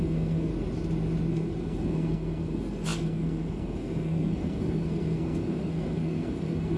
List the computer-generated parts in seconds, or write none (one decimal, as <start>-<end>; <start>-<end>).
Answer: 0.0-0.5; 1.3-6.8